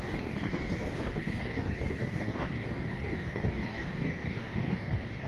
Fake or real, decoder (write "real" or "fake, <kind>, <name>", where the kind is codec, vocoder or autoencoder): fake, codec, DAC